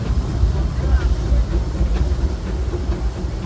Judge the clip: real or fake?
real